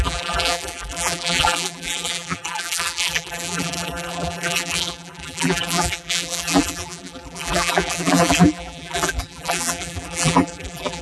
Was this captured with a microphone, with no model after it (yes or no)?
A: no